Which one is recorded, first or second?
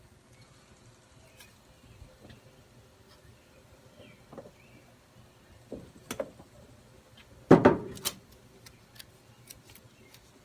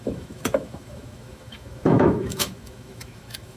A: first